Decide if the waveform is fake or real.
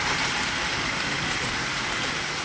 fake